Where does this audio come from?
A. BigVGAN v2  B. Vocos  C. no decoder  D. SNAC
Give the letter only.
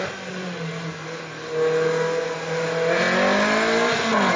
C